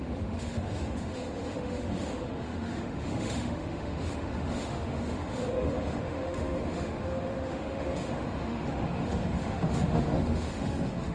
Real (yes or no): no